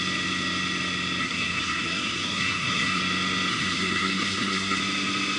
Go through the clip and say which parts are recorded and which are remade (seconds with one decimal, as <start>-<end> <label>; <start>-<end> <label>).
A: 0.0-1.2 recorded; 1.2-3.0 remade; 3.0-3.5 recorded; 3.5-4.8 remade; 4.8-5.4 recorded